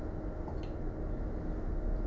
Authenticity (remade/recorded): recorded